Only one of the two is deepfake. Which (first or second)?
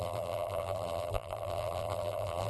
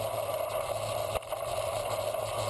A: first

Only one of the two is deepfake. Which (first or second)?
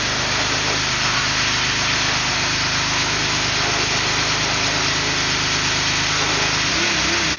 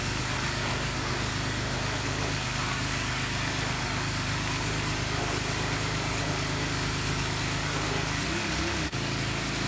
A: second